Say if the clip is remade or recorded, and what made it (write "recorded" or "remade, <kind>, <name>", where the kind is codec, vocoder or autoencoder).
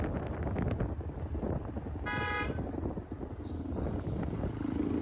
recorded